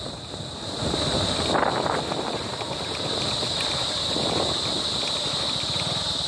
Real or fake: real